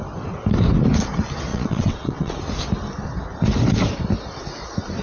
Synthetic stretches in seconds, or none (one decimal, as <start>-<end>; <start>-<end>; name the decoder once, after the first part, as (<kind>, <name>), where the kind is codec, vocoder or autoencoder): 1.5-2.3 (vocoder, WaveNeXt)